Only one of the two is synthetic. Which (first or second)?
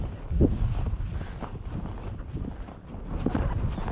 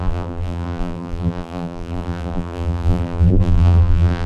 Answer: second